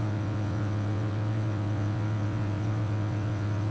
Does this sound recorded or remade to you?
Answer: remade